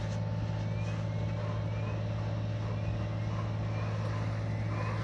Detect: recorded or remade recorded